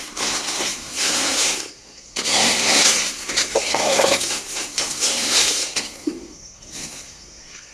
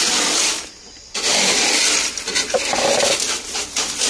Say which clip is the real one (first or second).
second